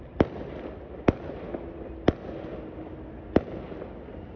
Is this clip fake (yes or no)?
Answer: no